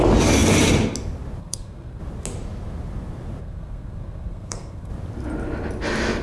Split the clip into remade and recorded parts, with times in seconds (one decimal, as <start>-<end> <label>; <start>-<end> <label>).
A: 0.0-1.4 recorded; 1.4-2.0 remade; 2.0-3.4 recorded; 3.4-4.9 remade; 4.9-6.2 recorded